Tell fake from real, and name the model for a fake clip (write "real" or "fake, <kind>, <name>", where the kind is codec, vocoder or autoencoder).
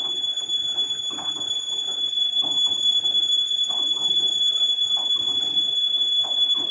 fake, codec, HILCodec